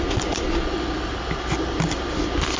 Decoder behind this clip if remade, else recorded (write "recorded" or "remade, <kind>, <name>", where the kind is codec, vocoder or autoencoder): recorded